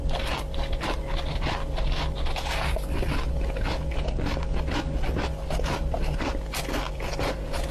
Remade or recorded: recorded